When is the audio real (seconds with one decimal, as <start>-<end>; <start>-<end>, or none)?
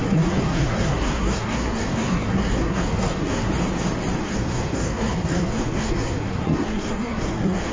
3.5-4.2